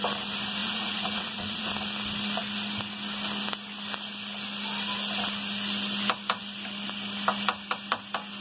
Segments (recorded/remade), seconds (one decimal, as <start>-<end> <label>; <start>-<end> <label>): 0.0-0.6 recorded; 0.6-1.7 remade; 1.7-8.4 recorded